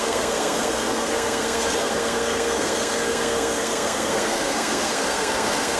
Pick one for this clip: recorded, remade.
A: remade